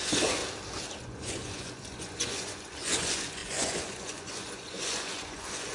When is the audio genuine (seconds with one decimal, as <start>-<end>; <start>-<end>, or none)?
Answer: 0.4-1.0

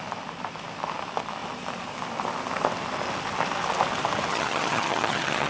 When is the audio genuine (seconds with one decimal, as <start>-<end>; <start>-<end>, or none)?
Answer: 0.0-4.3

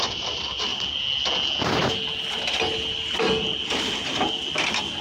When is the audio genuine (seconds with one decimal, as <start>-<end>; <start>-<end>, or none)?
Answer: 0.0-5.0

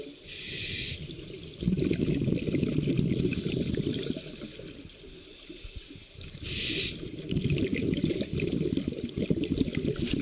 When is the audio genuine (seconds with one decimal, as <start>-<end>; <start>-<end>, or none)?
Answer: 0.0-10.2

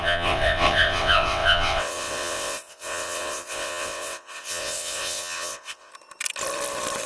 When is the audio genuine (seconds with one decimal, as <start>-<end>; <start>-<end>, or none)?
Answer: 5.9-7.1